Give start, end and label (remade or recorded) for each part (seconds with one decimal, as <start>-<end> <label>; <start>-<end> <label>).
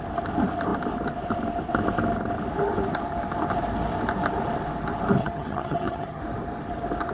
0.0-5.2 recorded; 5.2-6.2 remade; 6.2-7.1 recorded